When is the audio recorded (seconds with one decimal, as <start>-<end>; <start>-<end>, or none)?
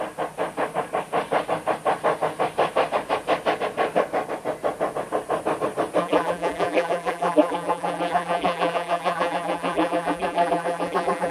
0.0-6.0